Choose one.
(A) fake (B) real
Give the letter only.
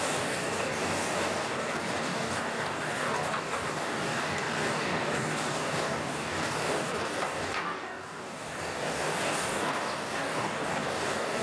A